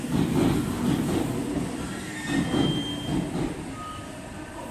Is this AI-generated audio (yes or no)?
no